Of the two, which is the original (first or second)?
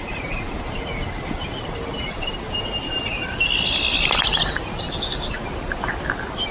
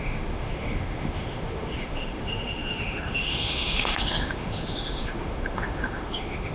first